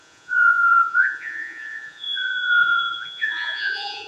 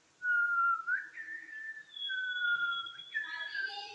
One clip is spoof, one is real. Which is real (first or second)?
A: second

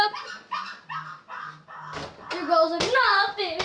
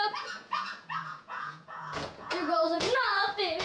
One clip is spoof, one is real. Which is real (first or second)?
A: first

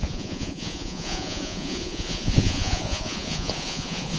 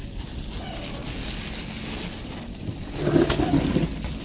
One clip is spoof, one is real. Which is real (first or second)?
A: second